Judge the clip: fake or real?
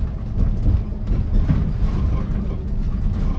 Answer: real